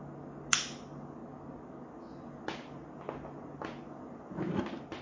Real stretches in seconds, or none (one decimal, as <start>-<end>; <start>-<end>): 0.0-5.0